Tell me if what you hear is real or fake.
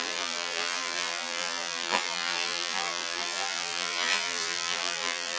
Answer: fake